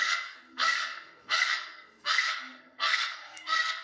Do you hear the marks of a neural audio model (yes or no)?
yes